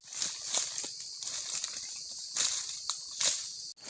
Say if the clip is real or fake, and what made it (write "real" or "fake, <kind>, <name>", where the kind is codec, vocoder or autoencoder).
real